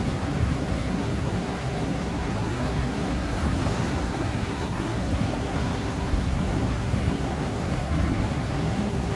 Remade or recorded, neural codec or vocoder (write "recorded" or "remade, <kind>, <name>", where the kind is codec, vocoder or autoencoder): remade, codec, SNAC